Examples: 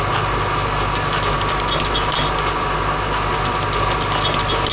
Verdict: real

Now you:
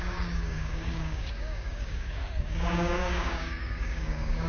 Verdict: fake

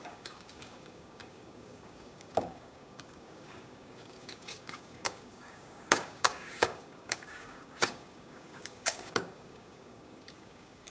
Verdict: fake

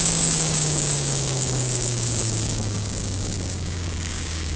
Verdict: fake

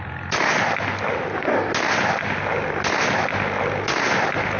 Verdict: real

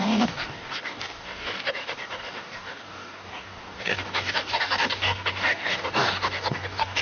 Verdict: fake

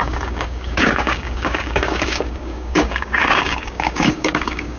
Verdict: fake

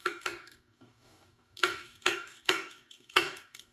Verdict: fake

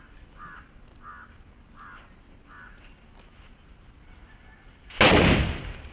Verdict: real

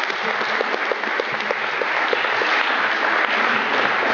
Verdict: real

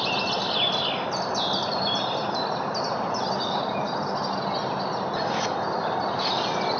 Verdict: real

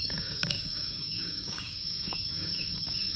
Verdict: fake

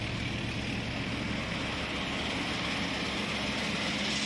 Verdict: real